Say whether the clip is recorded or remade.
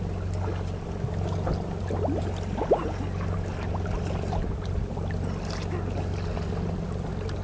recorded